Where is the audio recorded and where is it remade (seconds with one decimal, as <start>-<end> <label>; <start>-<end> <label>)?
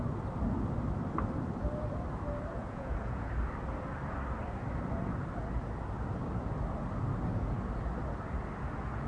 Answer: 0.0-2.6 recorded; 2.6-3.3 remade; 3.3-9.1 recorded